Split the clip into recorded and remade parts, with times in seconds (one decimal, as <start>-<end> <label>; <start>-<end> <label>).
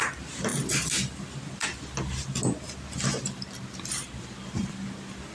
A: 0.0-5.3 recorded